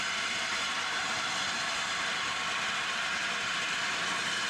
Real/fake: real